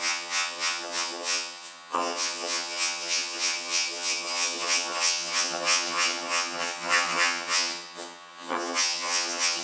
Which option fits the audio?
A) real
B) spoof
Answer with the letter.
B